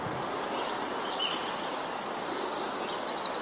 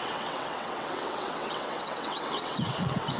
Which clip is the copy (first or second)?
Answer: second